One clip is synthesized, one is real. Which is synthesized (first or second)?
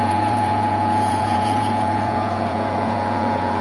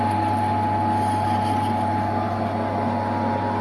first